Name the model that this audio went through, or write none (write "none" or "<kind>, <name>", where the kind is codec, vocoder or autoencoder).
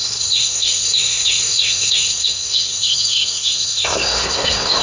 codec, SNAC